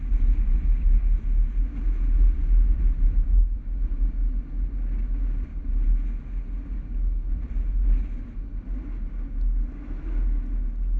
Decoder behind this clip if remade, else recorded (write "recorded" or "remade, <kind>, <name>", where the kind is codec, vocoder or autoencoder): recorded